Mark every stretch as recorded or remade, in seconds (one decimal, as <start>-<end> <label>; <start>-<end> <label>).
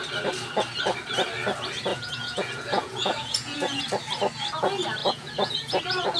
0.0-1.9 recorded; 1.9-3.8 remade; 3.8-5.0 recorded; 5.0-5.8 remade; 5.8-6.2 recorded